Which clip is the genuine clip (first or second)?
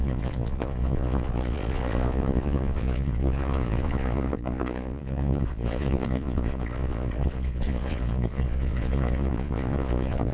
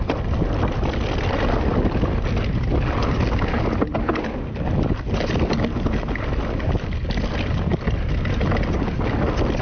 second